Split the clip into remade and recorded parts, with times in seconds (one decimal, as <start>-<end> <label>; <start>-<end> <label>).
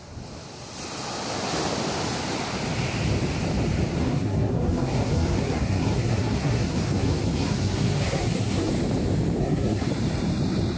0.0-3.9 recorded; 3.9-8.7 remade; 8.7-9.4 recorded; 9.4-9.9 remade; 9.9-10.8 recorded